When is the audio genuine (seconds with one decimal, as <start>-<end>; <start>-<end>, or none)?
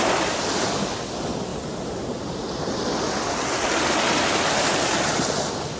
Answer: 0.0-5.8